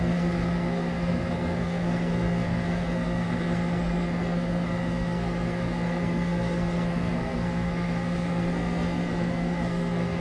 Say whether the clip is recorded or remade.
remade